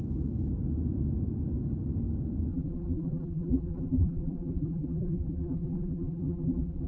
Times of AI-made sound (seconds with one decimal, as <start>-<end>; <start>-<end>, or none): 2.5-6.9